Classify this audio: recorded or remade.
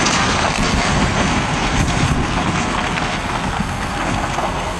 remade